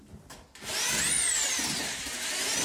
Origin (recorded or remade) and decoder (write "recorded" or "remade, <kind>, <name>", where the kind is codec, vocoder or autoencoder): recorded